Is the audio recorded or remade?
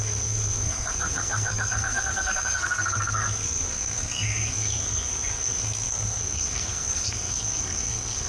remade